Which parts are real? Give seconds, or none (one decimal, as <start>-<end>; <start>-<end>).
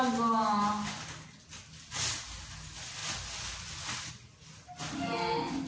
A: 0.0-5.7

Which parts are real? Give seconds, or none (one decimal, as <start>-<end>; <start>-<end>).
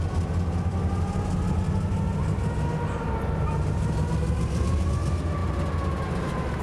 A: 0.0-6.6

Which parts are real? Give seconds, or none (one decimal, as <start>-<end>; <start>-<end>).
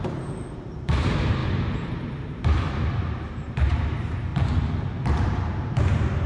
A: 4.3-5.5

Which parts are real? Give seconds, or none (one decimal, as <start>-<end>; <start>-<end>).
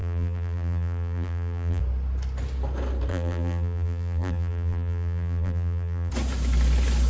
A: 1.8-3.1; 6.1-7.1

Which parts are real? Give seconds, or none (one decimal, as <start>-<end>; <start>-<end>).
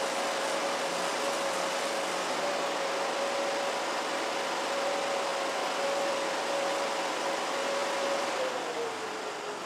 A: 0.0-7.8; 9.1-9.7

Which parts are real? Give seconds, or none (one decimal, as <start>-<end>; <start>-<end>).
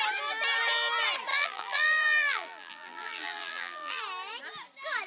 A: 0.0-1.3; 4.0-5.1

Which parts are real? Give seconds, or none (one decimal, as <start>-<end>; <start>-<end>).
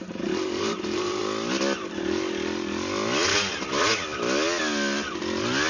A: 1.2-5.7